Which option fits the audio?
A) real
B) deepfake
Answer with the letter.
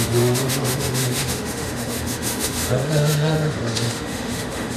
B